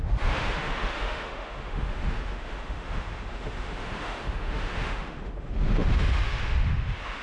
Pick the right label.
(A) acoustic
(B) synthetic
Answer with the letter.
B